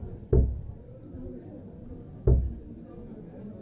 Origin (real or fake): real